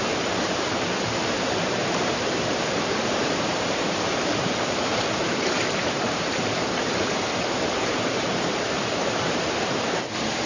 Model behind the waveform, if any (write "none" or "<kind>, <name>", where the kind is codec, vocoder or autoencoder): vocoder, BigVGAN v2